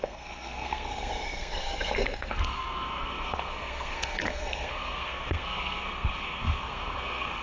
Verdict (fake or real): fake